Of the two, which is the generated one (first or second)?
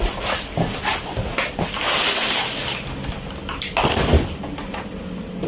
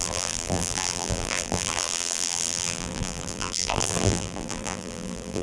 second